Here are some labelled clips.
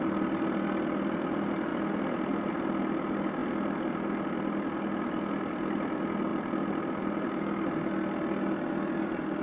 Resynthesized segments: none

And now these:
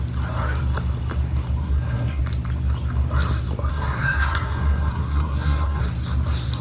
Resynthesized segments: 1.6-2.2 (codec, SNAC); 3.7-5.8

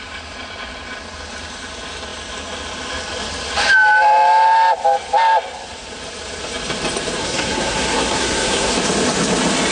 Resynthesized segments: 7.2-8.7 (codec, SNAC)

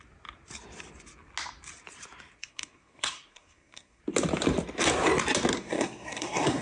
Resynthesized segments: 2.4-4.0 (codec, SNAC); 5.5-6.6

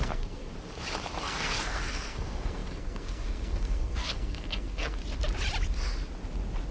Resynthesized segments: 0.0-0.5 (codec, SNAC); 1.2-5.0

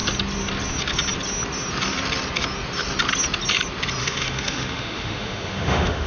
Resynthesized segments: 4.0-6.1 (autoencoder, DAC-VAE)

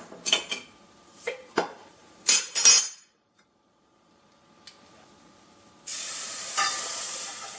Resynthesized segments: 1.0-4.3 (vocoder, BigVGAN v2); 5.9-7.6